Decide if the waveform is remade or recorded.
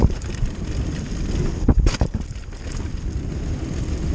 recorded